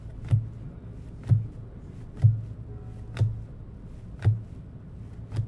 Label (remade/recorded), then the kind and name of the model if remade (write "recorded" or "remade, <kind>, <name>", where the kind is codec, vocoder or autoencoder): recorded